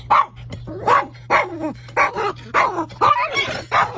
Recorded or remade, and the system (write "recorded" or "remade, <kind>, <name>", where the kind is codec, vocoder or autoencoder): recorded